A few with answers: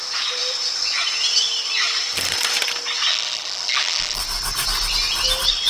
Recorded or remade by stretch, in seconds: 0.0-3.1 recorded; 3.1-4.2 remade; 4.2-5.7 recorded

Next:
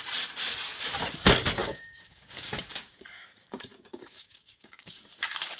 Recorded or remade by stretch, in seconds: 0.0-1.6 recorded; 1.6-5.0 remade; 5.0-5.6 recorded